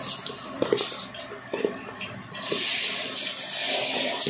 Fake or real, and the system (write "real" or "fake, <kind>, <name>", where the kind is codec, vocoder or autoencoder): real